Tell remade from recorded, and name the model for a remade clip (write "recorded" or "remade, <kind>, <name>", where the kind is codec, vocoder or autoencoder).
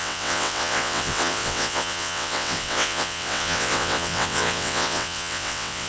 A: remade, vocoder, WaveNeXt